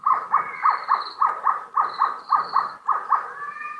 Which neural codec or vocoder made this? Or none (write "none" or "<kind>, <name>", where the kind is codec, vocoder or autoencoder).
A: none